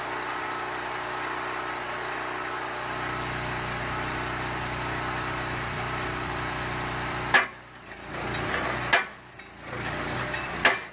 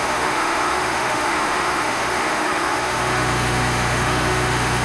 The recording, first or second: first